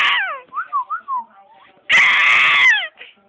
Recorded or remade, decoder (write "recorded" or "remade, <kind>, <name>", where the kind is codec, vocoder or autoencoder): recorded